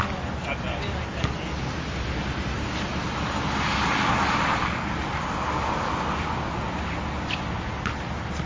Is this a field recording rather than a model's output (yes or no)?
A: yes